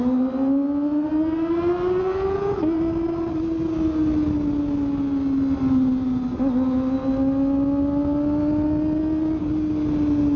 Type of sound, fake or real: real